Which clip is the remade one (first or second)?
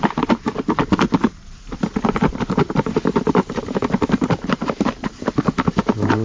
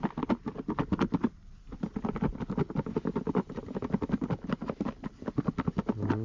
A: first